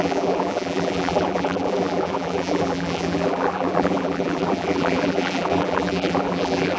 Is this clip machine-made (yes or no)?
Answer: yes